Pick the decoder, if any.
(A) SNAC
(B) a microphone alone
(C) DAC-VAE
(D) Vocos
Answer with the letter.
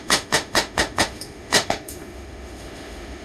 C